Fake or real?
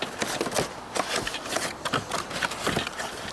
real